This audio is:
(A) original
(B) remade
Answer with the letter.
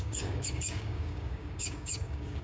B